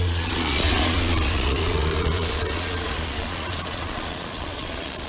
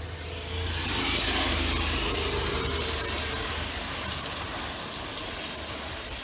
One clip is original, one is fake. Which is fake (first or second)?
first